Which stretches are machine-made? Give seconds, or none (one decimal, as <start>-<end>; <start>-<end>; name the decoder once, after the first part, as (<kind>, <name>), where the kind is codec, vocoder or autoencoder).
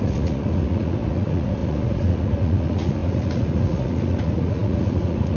0.0-5.4 (vocoder, Vocos)